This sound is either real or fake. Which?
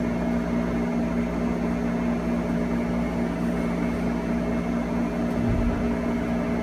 real